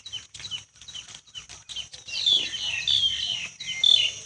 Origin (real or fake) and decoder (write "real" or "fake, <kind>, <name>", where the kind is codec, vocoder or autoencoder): real